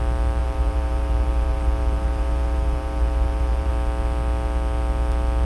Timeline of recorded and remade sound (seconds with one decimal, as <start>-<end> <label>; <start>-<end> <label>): 0.0-0.4 recorded; 0.4-3.7 remade; 3.7-5.5 recorded